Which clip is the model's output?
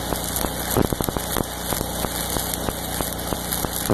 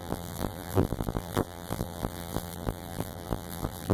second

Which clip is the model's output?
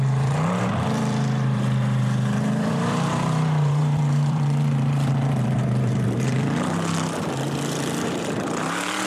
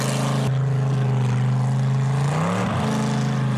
first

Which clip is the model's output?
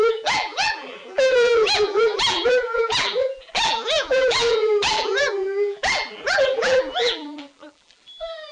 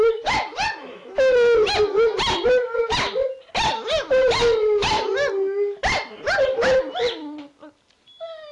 first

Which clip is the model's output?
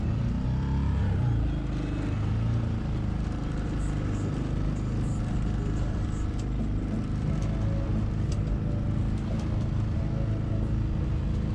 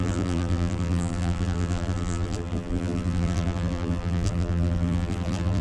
second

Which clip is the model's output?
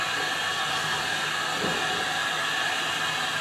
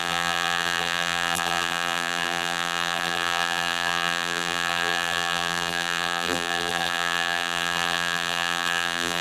second